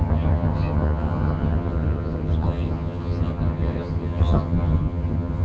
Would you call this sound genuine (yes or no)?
no